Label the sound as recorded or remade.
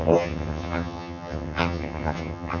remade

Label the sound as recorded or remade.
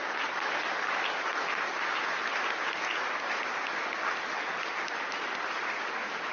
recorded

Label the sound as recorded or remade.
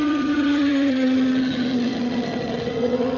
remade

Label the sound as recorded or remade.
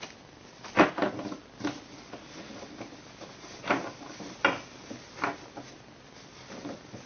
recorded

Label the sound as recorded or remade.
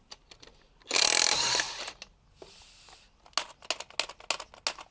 recorded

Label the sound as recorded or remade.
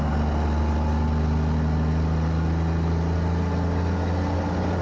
recorded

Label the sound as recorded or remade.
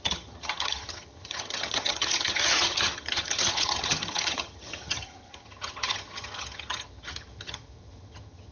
remade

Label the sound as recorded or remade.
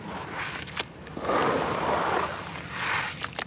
recorded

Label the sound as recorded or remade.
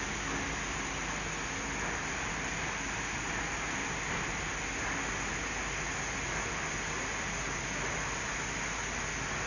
recorded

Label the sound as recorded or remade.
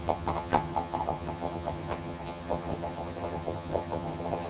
remade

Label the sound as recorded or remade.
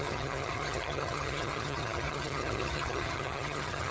remade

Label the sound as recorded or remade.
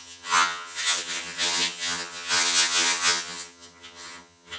remade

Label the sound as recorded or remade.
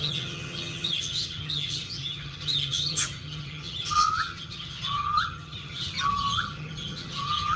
remade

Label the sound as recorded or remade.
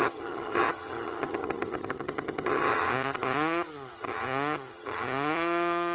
remade